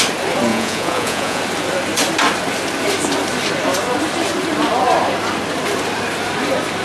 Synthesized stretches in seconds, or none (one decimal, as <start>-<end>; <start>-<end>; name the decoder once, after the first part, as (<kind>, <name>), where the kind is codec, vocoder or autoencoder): 0.5-1.4 (vocoder, Vocos)